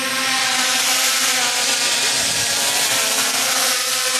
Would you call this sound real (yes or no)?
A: yes